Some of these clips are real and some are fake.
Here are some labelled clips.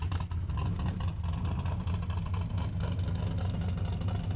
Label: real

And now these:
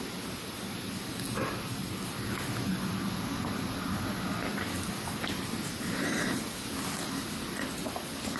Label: real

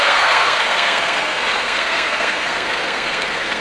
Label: fake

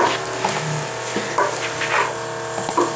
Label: real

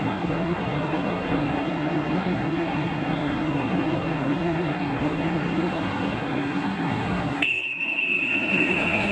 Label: fake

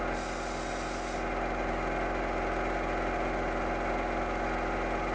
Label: real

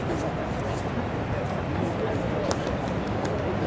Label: real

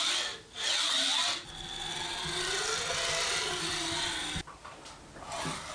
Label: real